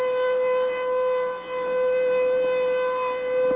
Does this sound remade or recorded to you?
recorded